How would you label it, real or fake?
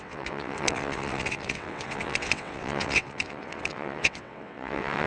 fake